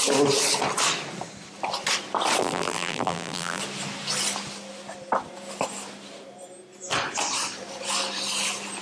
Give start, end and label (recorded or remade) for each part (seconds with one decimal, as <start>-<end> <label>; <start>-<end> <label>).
0.0-2.4 recorded; 2.4-3.6 remade; 3.6-8.8 recorded